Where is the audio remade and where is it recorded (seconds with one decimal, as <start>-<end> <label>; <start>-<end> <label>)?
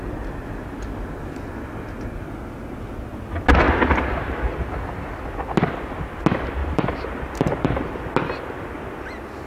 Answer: 0.0-6.6 recorded; 6.6-8.0 remade; 8.0-9.5 recorded